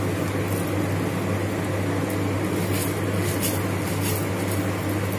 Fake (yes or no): no